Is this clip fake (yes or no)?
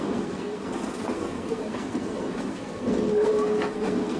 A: yes